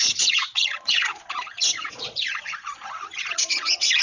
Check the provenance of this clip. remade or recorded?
remade